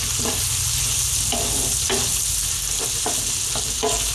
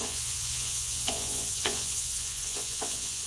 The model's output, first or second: second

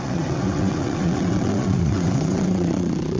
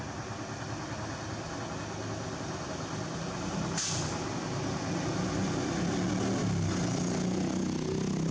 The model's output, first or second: first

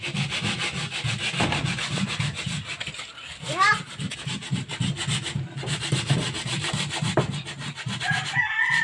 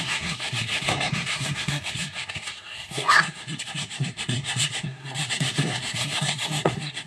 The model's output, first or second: second